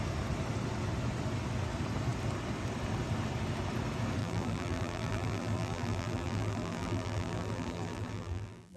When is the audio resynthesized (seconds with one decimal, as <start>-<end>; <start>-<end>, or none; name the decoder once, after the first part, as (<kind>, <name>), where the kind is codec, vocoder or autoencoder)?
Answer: 4.2-8.8 (vocoder, BigVGAN v2)